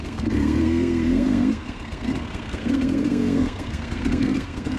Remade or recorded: remade